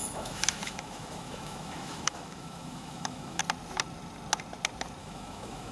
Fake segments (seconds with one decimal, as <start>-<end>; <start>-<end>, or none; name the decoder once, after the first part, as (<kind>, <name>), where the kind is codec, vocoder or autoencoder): 0.0-3.4 (autoencoder, DAC-VAE); 5.0-5.7